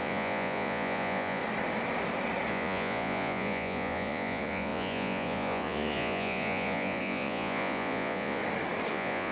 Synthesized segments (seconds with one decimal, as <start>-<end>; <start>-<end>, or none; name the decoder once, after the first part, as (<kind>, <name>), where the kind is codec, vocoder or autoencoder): 0.0-1.4 (vocoder, Vocos); 2.5-8.4; 8.9-9.3

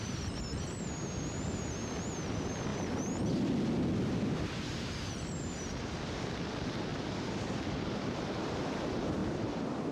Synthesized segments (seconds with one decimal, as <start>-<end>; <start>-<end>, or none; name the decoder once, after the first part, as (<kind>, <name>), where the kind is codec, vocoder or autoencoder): 2.7-3.5 (vocoder, BigVGAN v2); 6.9-8.2

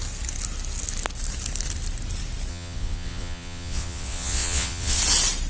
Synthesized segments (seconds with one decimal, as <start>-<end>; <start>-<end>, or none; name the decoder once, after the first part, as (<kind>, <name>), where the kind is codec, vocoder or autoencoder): 2.5-5.0 (vocoder, WaveNeXt)

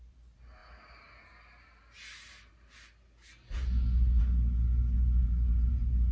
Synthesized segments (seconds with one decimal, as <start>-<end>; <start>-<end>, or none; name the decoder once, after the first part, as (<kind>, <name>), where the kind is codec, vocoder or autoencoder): 5.2-6.1 (vocoder, BigVGAN v2)

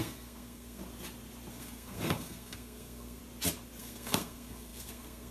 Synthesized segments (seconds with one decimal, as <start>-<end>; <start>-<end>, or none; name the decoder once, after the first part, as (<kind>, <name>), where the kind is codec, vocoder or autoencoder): 0.0-0.8 (codec, SNAC); 1.5-3.2; 3.8-5.3

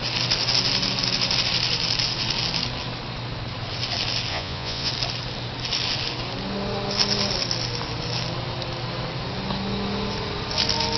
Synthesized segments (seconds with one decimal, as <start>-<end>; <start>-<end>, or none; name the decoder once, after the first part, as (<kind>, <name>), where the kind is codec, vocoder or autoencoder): 4.3-4.9 (vocoder, Vocos)

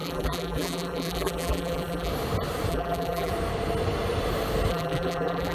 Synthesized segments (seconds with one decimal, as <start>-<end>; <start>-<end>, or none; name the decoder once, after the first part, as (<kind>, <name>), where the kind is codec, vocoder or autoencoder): 0.0-2.1 (vocoder, BigVGAN v2); 2.7-3.3; 4.7-5.5